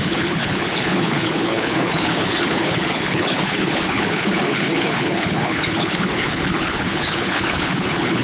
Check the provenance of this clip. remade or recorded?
remade